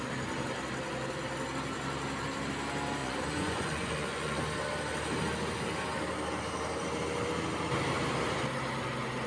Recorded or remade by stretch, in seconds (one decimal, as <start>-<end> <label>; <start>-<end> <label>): 0.0-3.0 recorded; 3.0-4.4 remade; 4.4-9.3 recorded